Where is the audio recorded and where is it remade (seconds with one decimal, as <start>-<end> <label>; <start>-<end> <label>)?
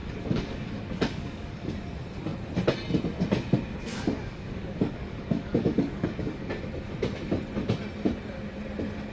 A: 0.0-1.7 remade; 1.7-3.9 recorded; 3.9-6.5 remade; 6.5-9.1 recorded